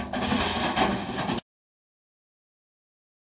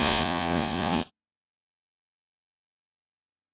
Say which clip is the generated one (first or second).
second